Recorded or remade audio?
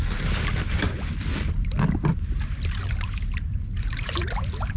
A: remade